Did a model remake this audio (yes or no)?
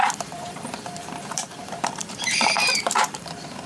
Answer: yes